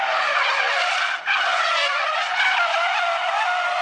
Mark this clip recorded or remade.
recorded